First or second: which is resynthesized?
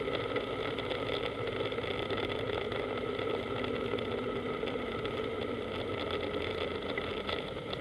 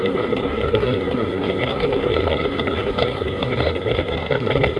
second